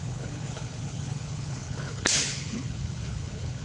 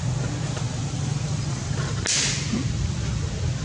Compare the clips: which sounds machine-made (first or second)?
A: first